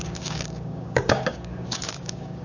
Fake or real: fake